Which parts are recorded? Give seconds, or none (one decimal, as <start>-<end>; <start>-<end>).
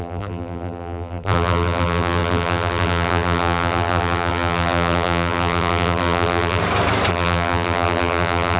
6.6-7.1